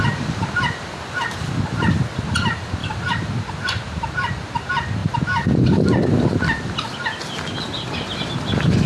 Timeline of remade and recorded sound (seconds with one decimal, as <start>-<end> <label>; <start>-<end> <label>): 0.0-2.8 recorded; 2.8-4.3 remade; 4.3-8.9 recorded